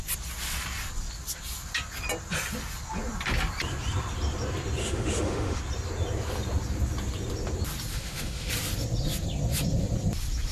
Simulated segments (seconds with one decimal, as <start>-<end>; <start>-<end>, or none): 4.8-5.6; 7.9-8.5